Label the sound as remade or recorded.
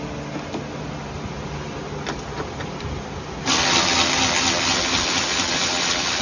recorded